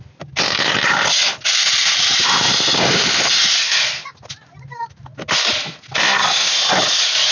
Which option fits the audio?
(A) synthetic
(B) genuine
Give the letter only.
B